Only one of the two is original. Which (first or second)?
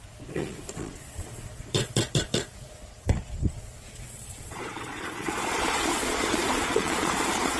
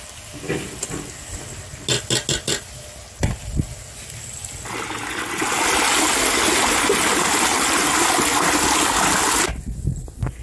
second